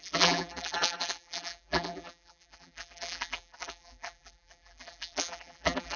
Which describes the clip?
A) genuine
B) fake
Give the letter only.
B